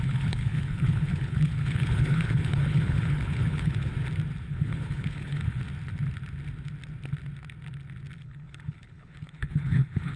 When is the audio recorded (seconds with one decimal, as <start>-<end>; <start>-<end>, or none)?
3.9-4.5; 5.6-8.2